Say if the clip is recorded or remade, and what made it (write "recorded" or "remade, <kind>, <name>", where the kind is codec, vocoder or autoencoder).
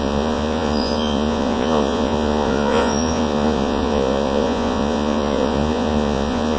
remade, vocoder, Vocos